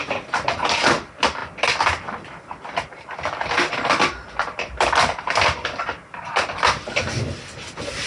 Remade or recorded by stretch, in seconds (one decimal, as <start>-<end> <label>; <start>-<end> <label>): 0.0-8.1 recorded